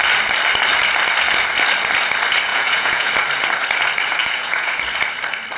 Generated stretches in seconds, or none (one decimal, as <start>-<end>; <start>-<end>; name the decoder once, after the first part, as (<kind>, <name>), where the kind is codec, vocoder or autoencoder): 2.5-3.1 (vocoder, Vocos); 4.2-4.8